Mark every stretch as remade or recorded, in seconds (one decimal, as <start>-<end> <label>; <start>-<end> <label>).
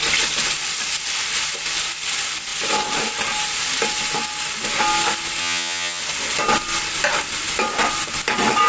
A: 0.0-5.4 recorded; 5.4-6.0 remade; 6.0-8.7 recorded